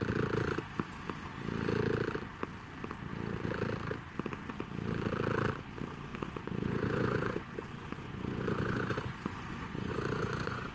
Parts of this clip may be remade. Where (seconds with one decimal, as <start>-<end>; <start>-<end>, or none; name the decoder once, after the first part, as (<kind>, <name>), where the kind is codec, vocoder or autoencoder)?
6.1-10.7 (vocoder, Vocos)